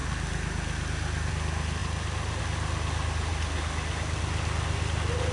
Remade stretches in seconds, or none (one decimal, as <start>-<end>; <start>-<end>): none